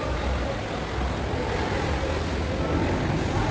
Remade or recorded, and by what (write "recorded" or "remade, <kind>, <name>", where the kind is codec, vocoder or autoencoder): recorded